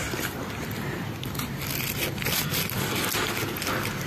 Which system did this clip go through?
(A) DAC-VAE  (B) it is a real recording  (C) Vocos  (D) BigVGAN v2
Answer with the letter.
B